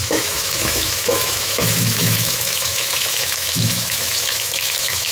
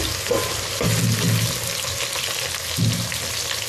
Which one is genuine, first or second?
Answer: second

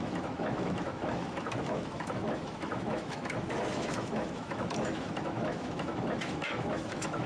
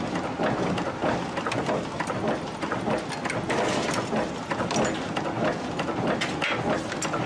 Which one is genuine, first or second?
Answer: second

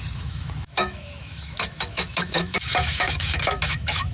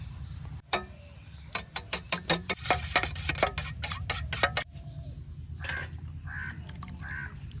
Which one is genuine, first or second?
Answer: second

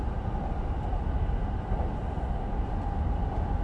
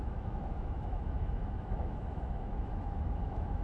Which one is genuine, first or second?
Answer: first